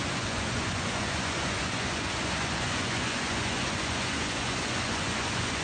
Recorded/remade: remade